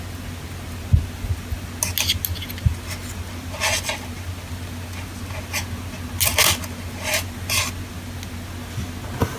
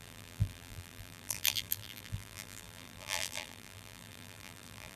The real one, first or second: first